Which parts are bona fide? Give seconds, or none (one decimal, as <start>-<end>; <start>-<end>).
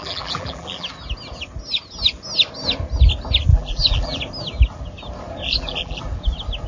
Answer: 0.9-3.5; 4.2-5.4; 6.0-6.7